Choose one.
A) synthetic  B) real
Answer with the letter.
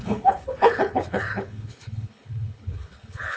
A